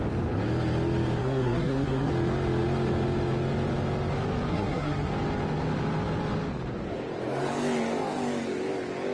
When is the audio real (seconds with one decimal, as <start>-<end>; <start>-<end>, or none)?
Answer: 0.0-1.2; 2.1-4.5; 5.1-9.1